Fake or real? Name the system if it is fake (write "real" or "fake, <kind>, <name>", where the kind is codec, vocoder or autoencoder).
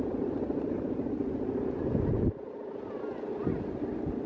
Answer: real